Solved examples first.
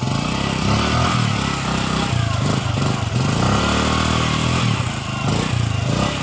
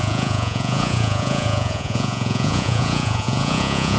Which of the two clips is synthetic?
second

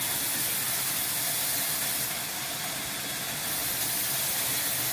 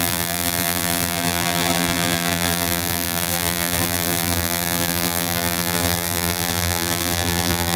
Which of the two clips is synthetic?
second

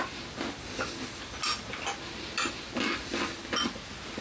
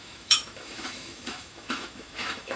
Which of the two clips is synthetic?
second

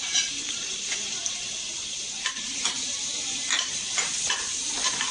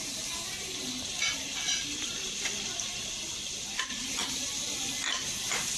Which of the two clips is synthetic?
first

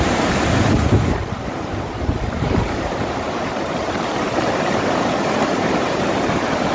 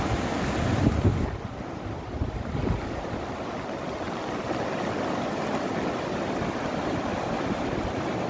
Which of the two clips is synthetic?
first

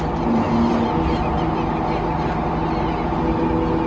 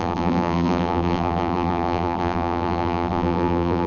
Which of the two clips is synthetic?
second